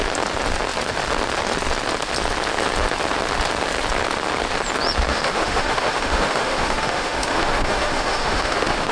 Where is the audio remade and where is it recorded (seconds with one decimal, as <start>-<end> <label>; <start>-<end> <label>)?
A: 0.0-5.1 recorded; 5.1-8.9 remade